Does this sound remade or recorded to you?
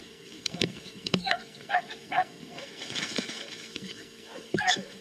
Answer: remade